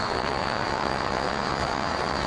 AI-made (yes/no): yes